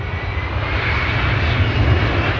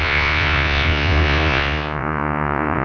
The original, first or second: first